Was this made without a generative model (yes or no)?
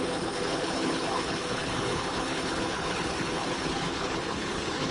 no